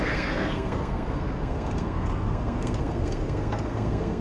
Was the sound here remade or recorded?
remade